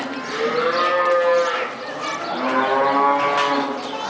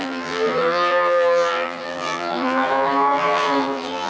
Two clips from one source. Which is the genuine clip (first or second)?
first